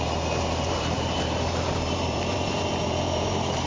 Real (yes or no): no